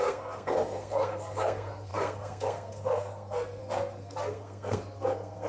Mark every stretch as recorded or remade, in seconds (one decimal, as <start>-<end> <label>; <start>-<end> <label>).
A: 0.0-5.5 remade